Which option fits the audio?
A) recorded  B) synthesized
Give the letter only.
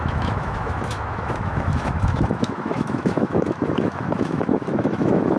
B